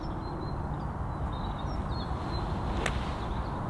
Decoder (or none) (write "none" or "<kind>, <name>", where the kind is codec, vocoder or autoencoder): none